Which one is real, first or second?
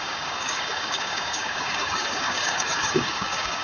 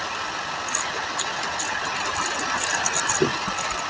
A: second